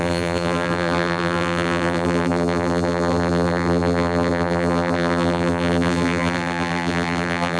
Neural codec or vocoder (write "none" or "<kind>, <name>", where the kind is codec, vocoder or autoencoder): vocoder, BigVGAN v2